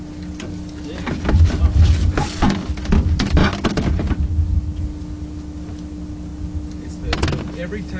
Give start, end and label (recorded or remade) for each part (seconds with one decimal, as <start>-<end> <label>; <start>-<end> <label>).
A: 0.0-8.0 recorded